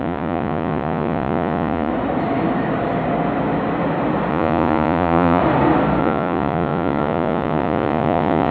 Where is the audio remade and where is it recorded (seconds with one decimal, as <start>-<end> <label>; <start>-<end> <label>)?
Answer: 0.0-1.9 remade; 1.9-4.3 recorded; 4.3-5.4 remade; 5.4-6.0 recorded; 6.0-8.5 remade